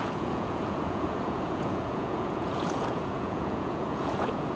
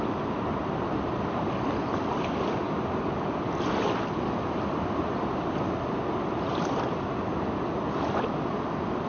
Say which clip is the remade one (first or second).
first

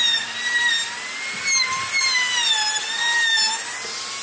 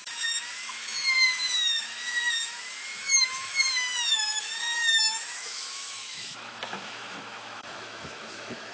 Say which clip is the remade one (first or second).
second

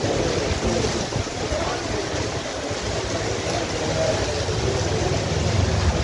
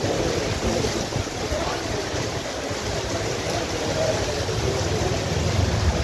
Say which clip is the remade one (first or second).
second